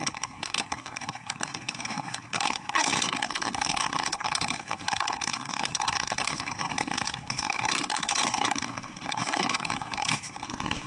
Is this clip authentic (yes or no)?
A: no